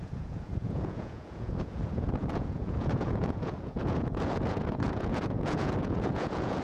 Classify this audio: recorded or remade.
remade